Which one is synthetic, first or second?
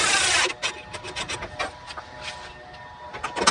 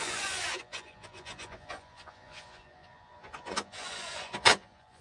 second